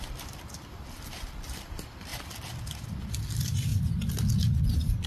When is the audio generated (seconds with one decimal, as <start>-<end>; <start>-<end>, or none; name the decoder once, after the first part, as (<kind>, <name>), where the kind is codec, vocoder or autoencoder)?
0.0-2.1 (vocoder, BigVGAN v2); 3.1-3.7; 4.6-5.1